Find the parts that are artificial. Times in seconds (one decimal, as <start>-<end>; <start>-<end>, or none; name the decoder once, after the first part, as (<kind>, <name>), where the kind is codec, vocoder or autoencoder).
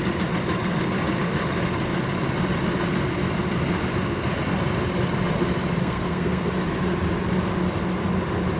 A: 5.8-6.5 (codec, SNAC)